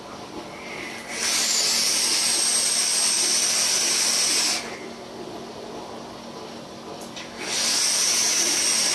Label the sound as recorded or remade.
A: recorded